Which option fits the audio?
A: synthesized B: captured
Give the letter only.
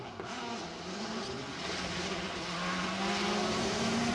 B